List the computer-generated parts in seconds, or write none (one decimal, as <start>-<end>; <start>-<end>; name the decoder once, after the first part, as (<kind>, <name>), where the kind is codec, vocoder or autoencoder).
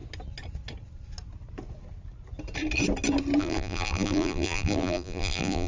3.4-5.7 (vocoder, BigVGAN v2)